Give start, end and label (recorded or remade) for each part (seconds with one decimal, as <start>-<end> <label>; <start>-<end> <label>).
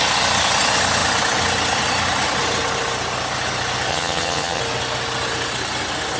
0.0-3.9 recorded; 3.9-4.6 remade; 4.6-6.2 recorded